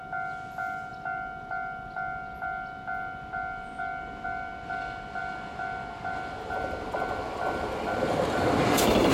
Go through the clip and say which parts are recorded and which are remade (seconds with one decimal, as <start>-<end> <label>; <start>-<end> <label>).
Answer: 0.0-9.1 recorded